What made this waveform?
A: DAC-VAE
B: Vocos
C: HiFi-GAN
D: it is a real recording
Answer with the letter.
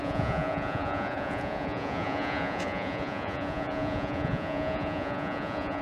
B